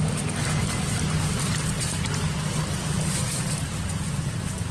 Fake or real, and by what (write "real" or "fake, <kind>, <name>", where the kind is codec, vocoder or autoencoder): real